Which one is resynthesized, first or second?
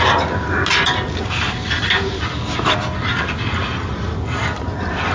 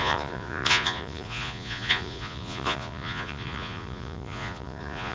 second